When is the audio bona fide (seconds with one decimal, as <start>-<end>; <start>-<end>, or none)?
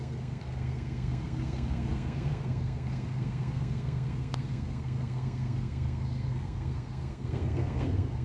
none